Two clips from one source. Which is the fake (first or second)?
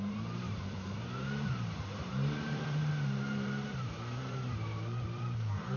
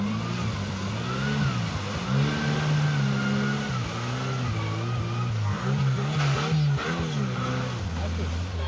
first